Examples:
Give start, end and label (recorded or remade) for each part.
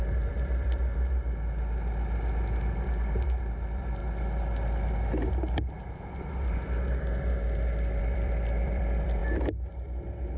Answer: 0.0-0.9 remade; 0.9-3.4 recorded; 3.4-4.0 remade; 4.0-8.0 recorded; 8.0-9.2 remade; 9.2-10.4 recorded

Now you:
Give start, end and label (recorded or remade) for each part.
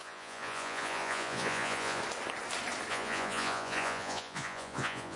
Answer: 0.0-2.0 remade; 2.0-2.9 recorded; 2.9-5.2 remade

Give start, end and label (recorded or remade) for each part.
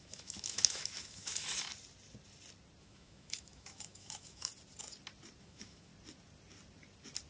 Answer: 0.0-1.7 remade; 1.7-2.8 recorded; 2.8-4.5 remade; 4.5-5.4 recorded; 5.4-5.9 remade; 5.9-7.3 recorded